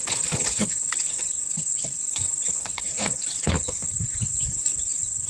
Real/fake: fake